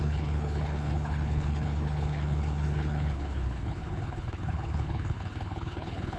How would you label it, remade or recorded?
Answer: remade